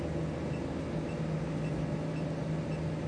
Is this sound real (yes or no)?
yes